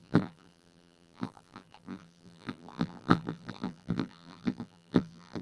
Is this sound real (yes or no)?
no